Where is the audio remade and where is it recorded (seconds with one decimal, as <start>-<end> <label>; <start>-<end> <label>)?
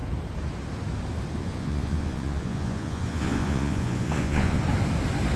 0.0-1.4 recorded; 1.4-4.6 remade; 4.6-5.4 recorded